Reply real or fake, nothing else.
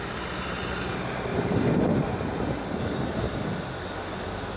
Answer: real